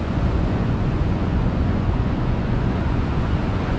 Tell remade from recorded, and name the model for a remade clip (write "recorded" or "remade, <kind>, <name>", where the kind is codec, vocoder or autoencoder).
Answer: remade, vocoder, Vocos